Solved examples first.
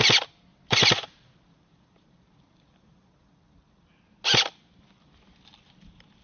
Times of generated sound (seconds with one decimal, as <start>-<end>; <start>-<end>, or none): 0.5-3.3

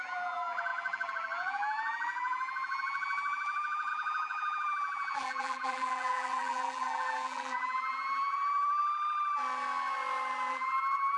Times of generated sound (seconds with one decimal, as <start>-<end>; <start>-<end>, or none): 0.0-8.8; 10.5-11.2

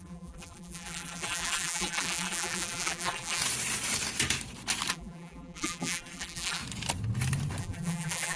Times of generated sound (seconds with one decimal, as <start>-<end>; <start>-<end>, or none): 0.0-3.4; 4.9-6.6; 7.6-8.4

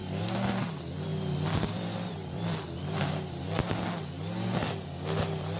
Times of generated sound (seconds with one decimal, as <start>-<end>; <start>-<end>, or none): 1.1-3.4

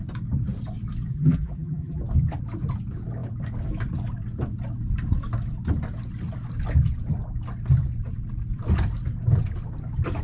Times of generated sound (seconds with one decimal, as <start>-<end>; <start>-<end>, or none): 1.1-2.0

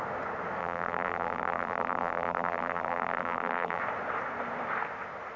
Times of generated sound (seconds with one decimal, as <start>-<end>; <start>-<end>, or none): 0.6-3.8